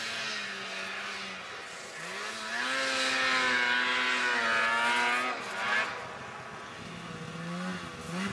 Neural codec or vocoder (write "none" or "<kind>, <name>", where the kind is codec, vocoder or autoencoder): none